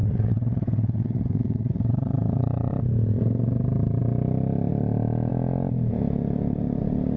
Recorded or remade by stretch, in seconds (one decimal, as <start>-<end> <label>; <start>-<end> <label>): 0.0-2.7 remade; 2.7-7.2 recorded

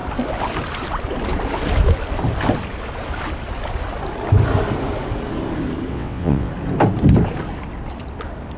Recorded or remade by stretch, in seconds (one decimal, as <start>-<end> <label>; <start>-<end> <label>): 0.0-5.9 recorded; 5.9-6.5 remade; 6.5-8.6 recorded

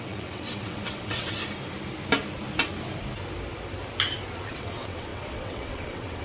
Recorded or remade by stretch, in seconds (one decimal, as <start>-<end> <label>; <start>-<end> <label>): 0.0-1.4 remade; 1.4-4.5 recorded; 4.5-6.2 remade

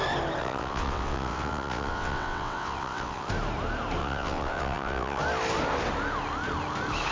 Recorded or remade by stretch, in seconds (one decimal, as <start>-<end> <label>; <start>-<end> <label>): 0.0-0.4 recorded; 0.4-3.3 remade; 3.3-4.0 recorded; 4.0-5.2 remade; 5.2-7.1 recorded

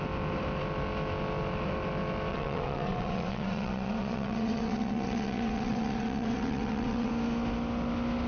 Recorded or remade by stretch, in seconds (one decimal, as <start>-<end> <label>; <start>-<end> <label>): 0.0-2.3 recorded; 2.3-7.1 remade; 7.1-8.3 recorded

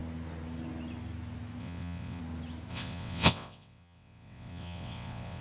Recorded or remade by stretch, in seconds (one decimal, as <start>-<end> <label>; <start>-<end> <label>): 0.0-1.6 recorded; 1.6-2.2 remade; 2.2-2.7 recorded; 2.7-5.4 remade